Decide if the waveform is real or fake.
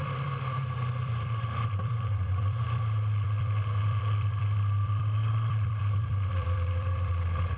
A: fake